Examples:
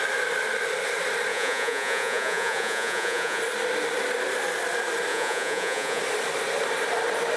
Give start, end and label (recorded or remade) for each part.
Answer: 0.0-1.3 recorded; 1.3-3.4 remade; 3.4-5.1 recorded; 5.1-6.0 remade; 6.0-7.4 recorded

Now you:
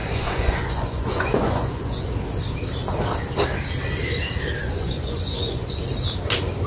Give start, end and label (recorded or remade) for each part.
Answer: 0.0-2.1 remade; 2.1-4.6 recorded; 4.6-5.8 remade; 5.8-6.7 recorded